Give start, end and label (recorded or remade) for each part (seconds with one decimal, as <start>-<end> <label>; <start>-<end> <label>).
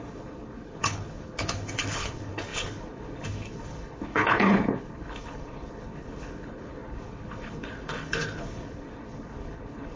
0.0-10.0 remade